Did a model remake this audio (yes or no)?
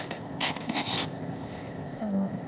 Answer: yes